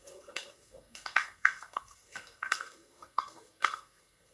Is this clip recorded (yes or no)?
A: no